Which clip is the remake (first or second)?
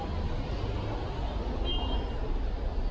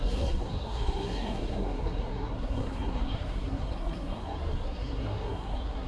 second